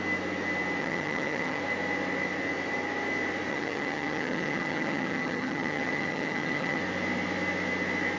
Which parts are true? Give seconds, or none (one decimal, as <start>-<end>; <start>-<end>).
0.0-0.8; 1.6-3.5; 6.8-8.2